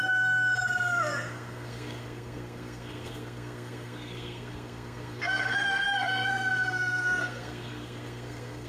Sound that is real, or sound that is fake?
fake